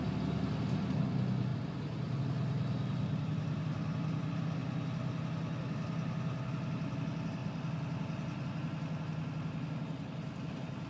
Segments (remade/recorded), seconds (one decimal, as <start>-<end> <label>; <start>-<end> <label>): 0.0-1.5 recorded; 1.5-2.2 remade; 2.2-10.9 recorded